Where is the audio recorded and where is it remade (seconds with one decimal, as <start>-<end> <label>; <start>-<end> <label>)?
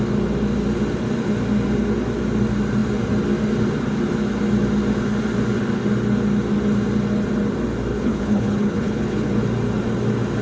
0.0-7.9 recorded; 7.9-9.3 remade; 9.3-10.4 recorded